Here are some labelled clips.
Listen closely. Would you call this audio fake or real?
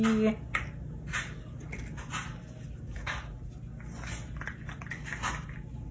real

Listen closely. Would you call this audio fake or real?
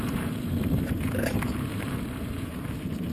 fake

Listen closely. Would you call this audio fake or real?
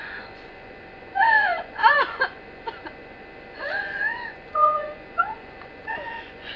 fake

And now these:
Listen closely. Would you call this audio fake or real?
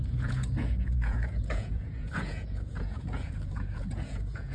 fake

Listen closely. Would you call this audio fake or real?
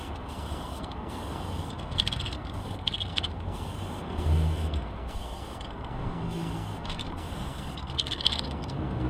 fake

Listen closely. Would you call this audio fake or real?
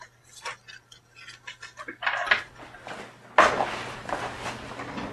real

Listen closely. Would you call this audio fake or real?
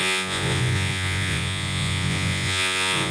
fake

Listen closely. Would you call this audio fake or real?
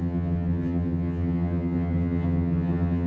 fake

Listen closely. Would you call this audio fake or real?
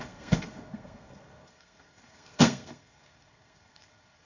fake